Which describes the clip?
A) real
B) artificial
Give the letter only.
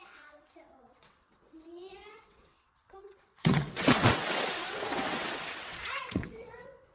B